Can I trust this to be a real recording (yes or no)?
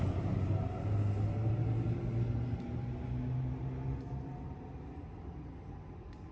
yes